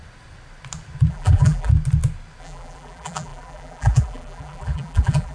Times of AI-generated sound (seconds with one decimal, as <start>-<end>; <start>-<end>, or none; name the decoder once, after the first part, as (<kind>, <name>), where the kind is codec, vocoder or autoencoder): 1.1-1.7 (vocoder, BigVGAN v2); 2.4-5.3